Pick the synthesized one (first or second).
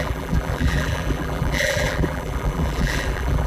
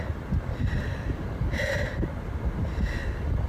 first